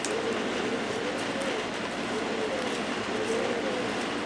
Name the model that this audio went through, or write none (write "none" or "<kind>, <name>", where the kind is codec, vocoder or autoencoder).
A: none